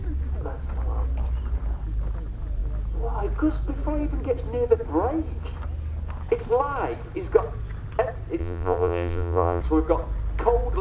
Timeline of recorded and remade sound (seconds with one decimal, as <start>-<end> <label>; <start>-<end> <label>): 0.0-8.4 recorded; 8.4-9.6 remade; 9.6-10.8 recorded

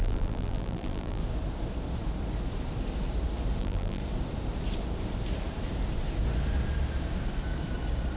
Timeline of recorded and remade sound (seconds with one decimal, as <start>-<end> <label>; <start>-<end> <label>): 0.0-1.2 remade; 1.2-3.6 recorded; 3.6-4.0 remade; 4.0-8.2 recorded

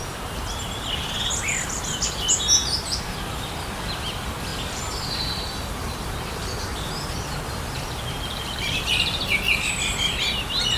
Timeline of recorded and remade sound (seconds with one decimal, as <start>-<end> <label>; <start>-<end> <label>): 0.0-2.6 recorded; 2.6-3.2 remade; 3.2-4.5 recorded; 4.5-9.4 remade; 9.4-10.8 recorded

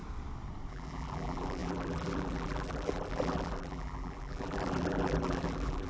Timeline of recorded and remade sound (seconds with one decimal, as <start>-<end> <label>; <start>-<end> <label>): 0.0-0.7 recorded; 0.7-5.9 remade

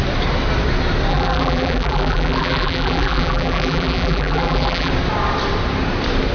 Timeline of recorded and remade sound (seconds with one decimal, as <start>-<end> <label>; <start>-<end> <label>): 0.0-1.1 recorded; 1.1-4.9 remade; 4.9-6.3 recorded

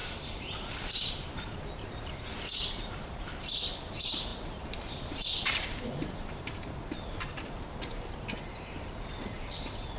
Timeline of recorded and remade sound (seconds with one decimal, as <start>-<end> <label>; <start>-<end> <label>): 0.0-10.0 remade

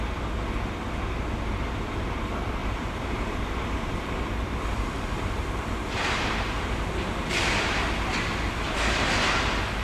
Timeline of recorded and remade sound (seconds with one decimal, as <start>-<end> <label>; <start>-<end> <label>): 0.0-2.6 recorded; 2.6-7.8 remade; 7.8-9.8 recorded

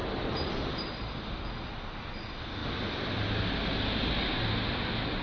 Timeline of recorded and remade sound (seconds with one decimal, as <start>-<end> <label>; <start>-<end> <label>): 0.0-5.2 recorded